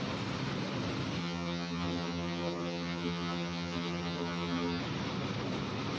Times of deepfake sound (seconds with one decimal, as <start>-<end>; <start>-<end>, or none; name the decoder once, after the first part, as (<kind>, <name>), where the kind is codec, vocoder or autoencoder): 1.2-4.8 (vocoder, HiFi-GAN)